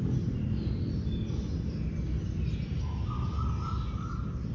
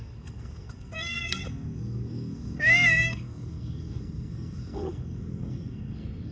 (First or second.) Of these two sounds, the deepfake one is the second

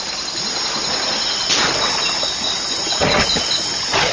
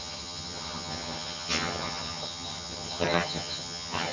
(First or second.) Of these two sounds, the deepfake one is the second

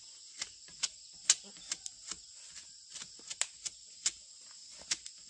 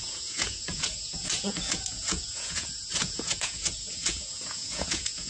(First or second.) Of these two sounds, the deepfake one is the second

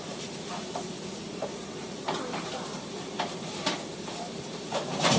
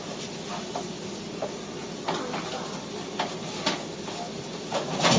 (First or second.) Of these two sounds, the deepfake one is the first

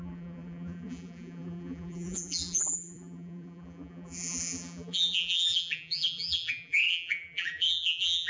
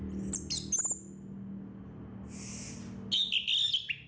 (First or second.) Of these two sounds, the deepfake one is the first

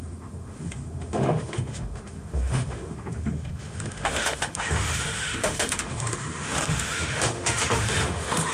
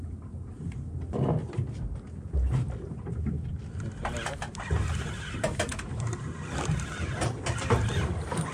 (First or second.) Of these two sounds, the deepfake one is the first